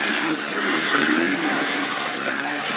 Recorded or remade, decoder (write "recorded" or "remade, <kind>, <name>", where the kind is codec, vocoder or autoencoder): remade, codec, SNAC